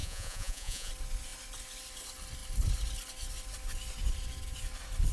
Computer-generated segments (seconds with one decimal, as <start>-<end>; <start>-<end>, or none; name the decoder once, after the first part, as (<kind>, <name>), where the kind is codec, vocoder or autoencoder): 0.0-0.9 (vocoder, Vocos)